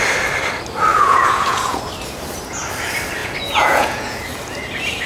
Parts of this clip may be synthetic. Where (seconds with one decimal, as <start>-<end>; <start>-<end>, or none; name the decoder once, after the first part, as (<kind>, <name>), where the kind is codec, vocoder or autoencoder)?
0.9-1.8 (vocoder, Vocos); 3.2-4.2